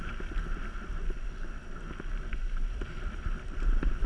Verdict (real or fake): real